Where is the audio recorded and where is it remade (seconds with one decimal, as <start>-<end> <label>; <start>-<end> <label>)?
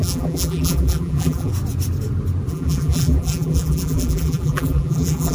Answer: 0.0-1.5 remade; 1.5-2.5 recorded; 2.5-5.3 remade